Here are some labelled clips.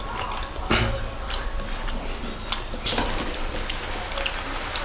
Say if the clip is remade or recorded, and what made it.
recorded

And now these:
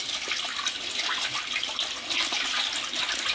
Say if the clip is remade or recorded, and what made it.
recorded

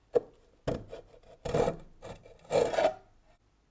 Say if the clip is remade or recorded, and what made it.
recorded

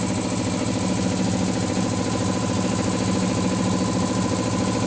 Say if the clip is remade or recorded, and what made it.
recorded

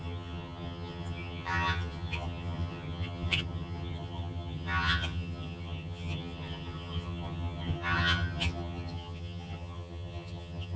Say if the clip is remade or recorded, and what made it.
remade, vocoder, HiFi-GAN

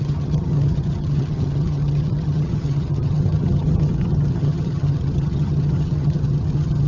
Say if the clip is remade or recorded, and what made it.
remade, vocoder, HiFi-GAN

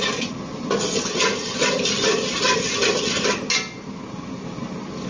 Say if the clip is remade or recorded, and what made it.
recorded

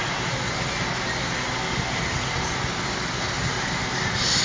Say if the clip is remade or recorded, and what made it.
recorded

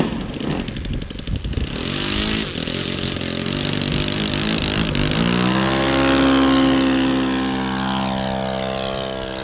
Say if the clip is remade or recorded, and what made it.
recorded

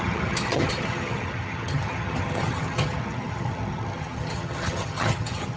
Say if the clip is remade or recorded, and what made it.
remade, vocoder, HiFi-GAN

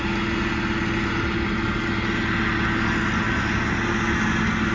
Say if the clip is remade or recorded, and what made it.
recorded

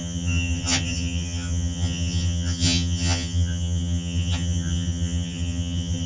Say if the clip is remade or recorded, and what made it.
remade, vocoder, HiFi-GAN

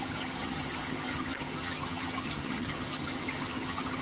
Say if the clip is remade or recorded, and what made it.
remade, vocoder, HiFi-GAN